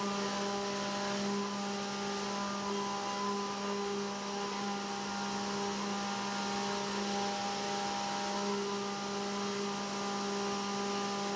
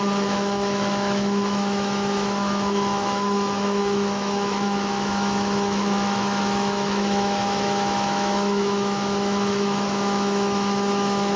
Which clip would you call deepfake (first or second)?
second